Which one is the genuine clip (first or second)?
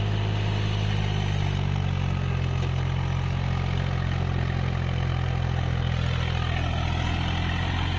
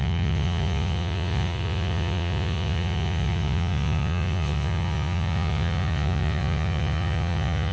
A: first